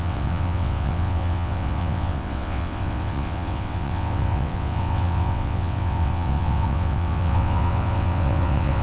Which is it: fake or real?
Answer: fake